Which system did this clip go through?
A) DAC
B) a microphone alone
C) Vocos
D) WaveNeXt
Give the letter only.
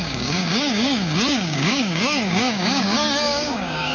A